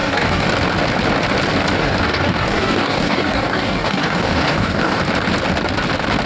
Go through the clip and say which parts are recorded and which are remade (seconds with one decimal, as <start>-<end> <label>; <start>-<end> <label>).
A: 0.0-0.5 remade; 0.5-1.8 recorded; 1.8-5.0 remade; 5.0-6.3 recorded